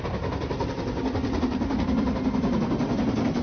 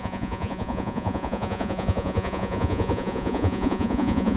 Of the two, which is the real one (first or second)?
first